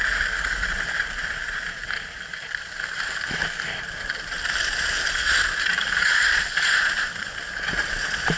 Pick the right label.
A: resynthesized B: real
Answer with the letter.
B